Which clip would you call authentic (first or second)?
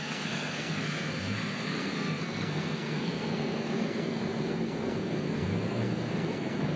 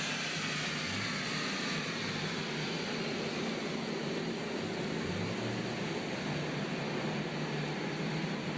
second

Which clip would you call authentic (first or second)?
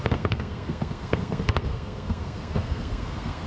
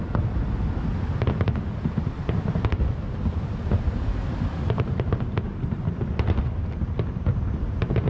second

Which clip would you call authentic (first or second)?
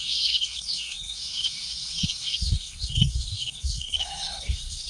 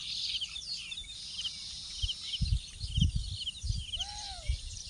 second